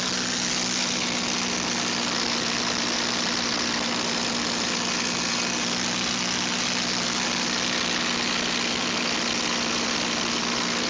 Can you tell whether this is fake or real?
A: real